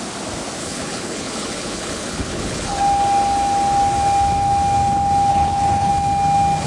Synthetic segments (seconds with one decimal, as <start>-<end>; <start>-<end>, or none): 0.6-2.8; 5.3-5.9